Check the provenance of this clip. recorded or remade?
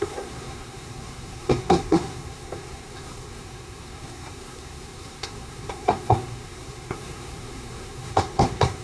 remade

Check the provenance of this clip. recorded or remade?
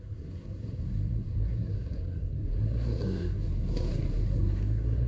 remade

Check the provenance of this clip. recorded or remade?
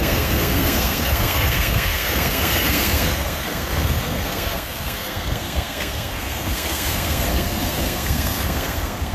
remade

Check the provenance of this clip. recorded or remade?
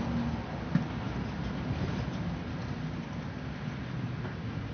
recorded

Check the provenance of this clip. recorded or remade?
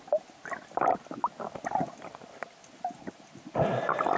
recorded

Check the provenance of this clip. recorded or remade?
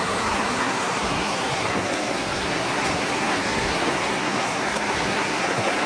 remade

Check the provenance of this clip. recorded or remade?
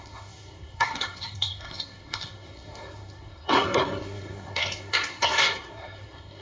remade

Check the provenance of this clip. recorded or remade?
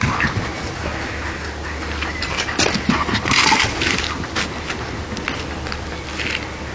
recorded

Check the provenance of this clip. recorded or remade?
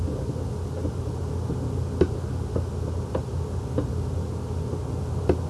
recorded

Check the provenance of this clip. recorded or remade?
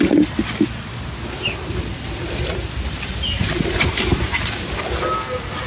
recorded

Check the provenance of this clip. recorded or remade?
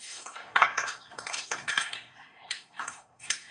remade